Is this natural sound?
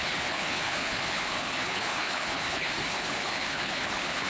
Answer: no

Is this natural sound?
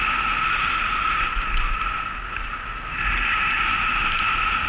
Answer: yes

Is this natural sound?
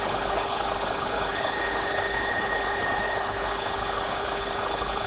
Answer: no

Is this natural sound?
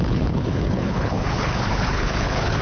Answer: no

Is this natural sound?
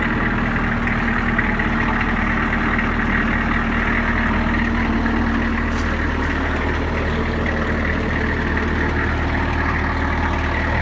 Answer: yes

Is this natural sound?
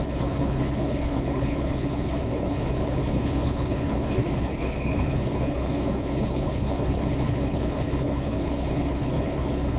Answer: no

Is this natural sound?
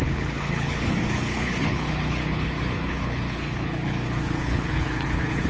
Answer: no